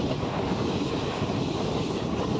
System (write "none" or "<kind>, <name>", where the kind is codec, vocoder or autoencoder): none